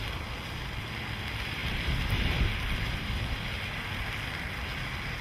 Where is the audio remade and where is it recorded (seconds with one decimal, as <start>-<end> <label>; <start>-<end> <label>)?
0.0-5.2 recorded